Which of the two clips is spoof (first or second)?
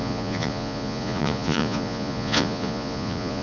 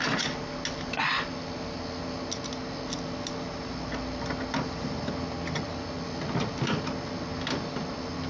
first